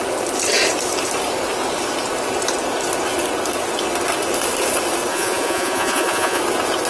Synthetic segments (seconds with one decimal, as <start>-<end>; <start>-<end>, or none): 5.1-6.4